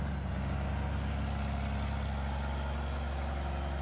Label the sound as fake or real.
real